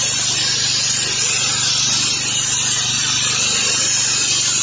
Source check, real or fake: real